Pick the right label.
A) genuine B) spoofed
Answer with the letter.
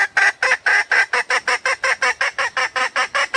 A